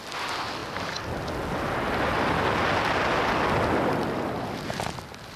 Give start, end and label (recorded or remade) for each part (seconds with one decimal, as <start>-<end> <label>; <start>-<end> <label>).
0.0-5.4 recorded

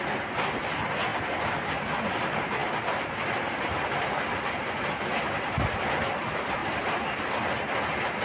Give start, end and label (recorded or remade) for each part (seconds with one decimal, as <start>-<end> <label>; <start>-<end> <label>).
0.0-8.2 recorded

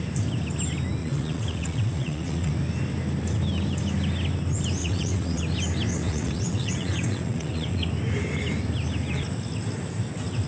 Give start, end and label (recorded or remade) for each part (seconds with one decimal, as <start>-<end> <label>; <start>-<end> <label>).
0.0-1.0 recorded; 1.0-2.5 remade; 2.5-4.8 recorded; 4.8-5.4 remade; 5.4-5.9 recorded; 5.9-7.9 remade; 7.9-10.5 recorded

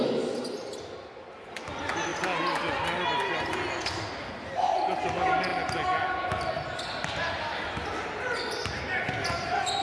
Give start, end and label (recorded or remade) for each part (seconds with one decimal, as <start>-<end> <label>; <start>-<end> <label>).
0.0-9.8 recorded

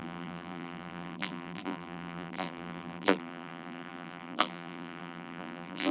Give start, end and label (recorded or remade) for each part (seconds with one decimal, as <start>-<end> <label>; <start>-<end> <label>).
0.0-5.9 remade

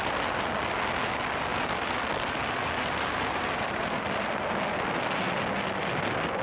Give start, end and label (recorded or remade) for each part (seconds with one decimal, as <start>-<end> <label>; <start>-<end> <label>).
0.0-6.4 recorded

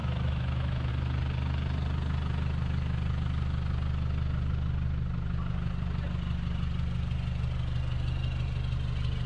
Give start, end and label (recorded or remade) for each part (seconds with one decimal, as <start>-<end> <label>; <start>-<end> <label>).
0.0-0.9 remade; 0.9-9.3 recorded